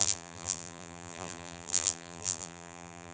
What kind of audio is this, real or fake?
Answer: fake